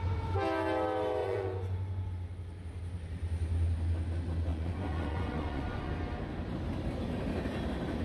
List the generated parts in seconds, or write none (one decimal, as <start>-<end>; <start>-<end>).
1.2-2.1; 4.5-5.9